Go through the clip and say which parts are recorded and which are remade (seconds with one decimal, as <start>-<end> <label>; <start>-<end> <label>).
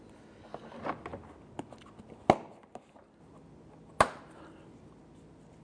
0.0-5.6 recorded